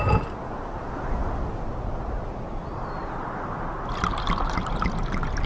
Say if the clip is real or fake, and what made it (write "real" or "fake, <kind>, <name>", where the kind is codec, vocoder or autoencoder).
real